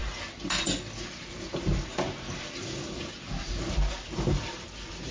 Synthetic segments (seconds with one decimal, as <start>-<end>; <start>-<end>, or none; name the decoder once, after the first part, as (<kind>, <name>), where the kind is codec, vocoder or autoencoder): none